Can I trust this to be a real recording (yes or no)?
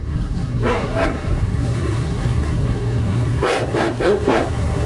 no